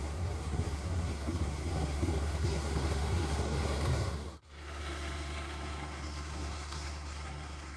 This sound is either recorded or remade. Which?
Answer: remade